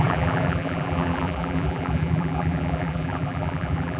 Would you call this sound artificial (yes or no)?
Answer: yes